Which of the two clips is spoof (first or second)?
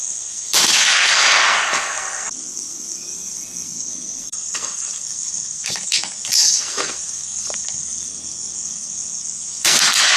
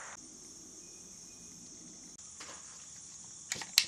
first